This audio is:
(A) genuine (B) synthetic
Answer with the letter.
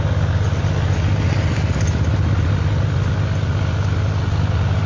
A